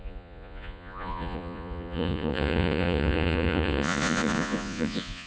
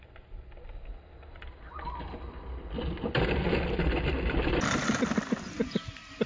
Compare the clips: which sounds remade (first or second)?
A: first